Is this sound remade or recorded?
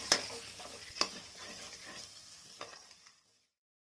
recorded